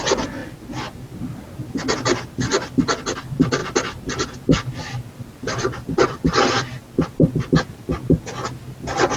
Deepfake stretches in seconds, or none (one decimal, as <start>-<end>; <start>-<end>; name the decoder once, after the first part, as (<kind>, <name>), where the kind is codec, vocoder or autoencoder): none